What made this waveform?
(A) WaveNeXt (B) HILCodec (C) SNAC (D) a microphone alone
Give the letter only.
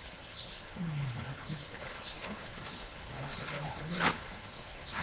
B